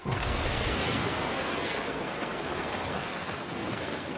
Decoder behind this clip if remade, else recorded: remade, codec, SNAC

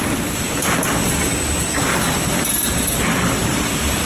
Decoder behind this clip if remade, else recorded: recorded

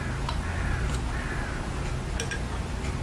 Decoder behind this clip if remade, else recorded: recorded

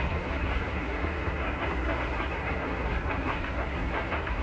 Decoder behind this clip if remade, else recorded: remade, codec, SNAC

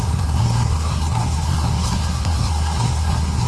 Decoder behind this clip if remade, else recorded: remade, codec, SNAC